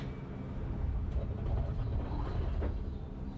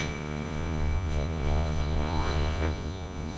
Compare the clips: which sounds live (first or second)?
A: first